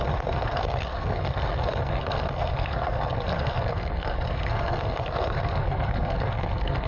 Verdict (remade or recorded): remade